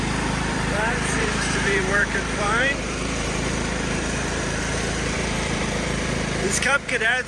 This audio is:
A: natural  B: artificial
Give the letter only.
B